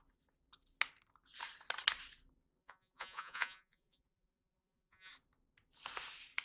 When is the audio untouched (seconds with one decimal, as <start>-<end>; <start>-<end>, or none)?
0.0-2.6; 5.1-6.4